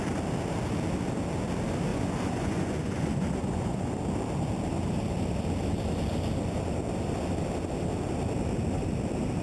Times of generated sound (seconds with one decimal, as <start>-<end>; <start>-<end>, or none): 1.9-3.9